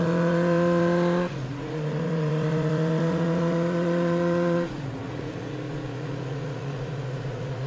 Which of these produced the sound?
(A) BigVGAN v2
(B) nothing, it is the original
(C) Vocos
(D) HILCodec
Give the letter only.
C